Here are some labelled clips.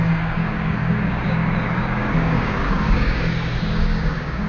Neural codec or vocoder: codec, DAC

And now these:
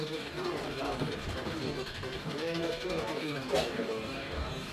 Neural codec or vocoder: codec, DAC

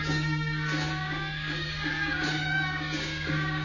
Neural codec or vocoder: codec, DAC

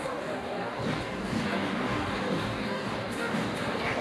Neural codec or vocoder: codec, DAC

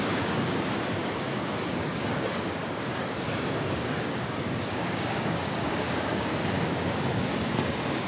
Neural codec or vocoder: codec, DAC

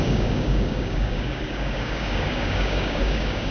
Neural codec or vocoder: codec, DAC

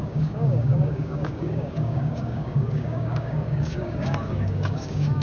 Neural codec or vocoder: codec, DAC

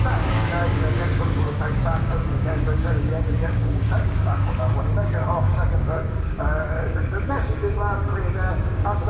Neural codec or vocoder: codec, DAC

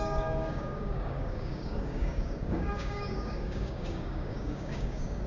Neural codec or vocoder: codec, DAC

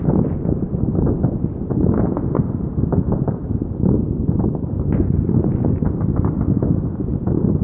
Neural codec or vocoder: none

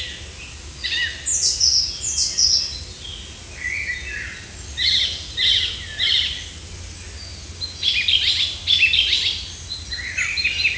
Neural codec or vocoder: none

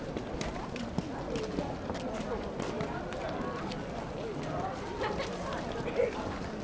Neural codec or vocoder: none